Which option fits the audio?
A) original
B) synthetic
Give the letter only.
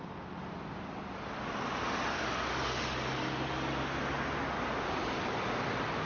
A